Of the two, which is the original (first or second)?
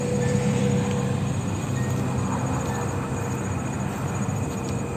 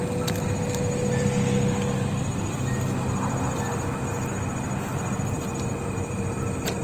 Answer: second